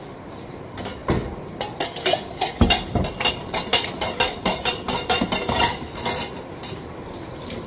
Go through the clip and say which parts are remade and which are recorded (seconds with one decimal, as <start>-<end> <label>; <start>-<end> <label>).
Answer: 0.0-1.0 recorded; 1.0-5.6 remade; 5.6-7.7 recorded